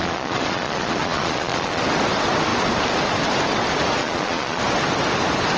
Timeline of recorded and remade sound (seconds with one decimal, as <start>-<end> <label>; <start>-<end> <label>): 0.0-1.8 remade; 1.8-4.0 recorded; 4.0-4.6 remade; 4.6-5.6 recorded